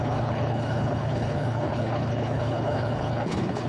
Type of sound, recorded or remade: remade